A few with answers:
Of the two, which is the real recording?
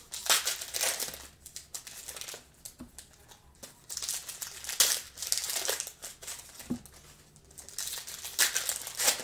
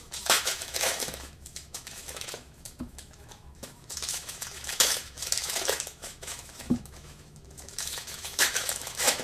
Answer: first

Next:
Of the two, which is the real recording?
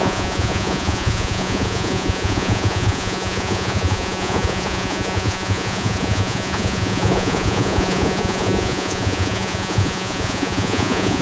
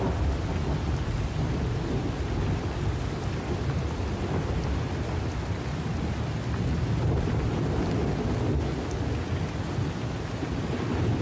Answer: second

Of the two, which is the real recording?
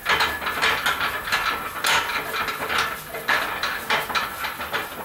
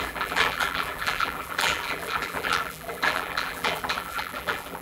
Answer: first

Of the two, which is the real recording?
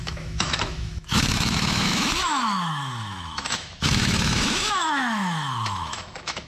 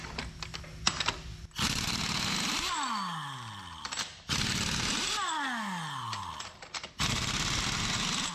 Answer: second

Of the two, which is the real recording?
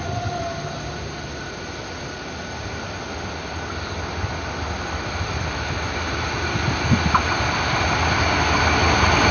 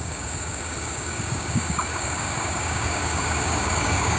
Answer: first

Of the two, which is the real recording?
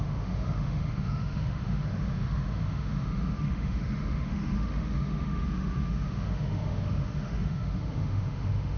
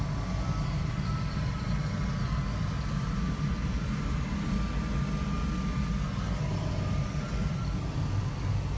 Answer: second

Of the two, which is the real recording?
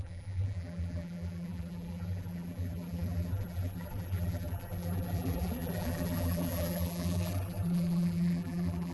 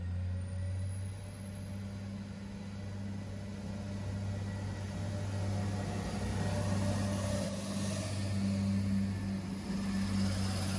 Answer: second